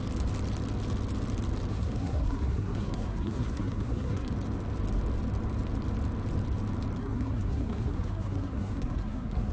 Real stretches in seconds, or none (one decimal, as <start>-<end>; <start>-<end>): 0.0-1.7; 4.3-7.0